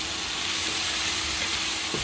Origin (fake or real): real